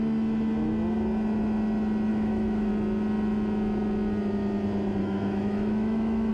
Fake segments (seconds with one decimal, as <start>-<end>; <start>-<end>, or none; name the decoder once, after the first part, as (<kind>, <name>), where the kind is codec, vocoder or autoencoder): 2.1-2.7 (autoencoder, DAC-VAE); 5.0-6.3